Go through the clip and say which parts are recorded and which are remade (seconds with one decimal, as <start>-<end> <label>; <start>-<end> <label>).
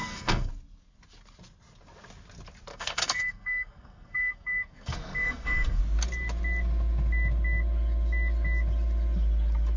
0.0-0.5 remade; 0.5-2.7 recorded; 2.7-5.8 remade; 5.8-9.8 recorded